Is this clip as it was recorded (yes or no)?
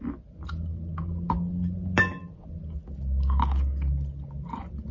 yes